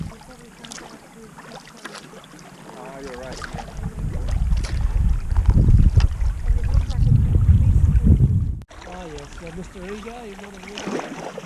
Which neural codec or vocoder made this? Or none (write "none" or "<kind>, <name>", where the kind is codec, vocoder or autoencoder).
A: none